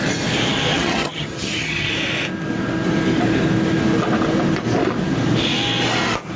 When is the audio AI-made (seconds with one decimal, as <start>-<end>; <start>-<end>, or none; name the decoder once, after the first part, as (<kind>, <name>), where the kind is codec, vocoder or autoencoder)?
0.7-1.9 (vocoder, HiFi-GAN)

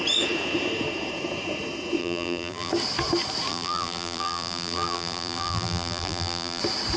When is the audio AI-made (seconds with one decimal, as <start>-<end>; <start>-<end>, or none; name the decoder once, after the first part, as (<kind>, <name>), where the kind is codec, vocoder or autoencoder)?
2.0-2.7 (vocoder, BigVGAN v2); 3.5-6.6

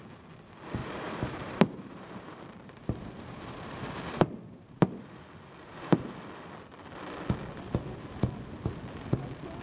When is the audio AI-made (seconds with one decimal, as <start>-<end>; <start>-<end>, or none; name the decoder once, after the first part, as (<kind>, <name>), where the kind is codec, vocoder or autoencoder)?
0.8-4.7 (vocoder, BigVGAN v2)